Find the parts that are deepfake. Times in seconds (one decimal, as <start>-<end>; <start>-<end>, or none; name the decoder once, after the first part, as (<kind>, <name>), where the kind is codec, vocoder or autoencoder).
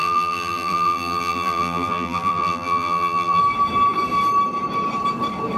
0.0-3.4 (vocoder, BigVGAN v2)